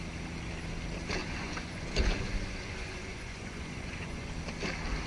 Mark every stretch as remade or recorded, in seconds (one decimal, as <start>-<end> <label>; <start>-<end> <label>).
0.0-1.2 recorded; 1.2-4.3 remade; 4.3-5.1 recorded